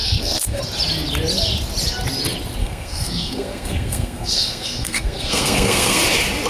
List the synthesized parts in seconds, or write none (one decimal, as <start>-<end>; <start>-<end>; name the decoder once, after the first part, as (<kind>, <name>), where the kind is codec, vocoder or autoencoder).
0.0-0.6 (codec, SNAC); 2.6-6.0